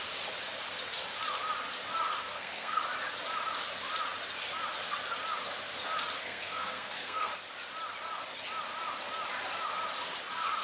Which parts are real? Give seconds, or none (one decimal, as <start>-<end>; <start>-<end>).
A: 0.0-2.2; 2.8-6.2; 7.3-10.6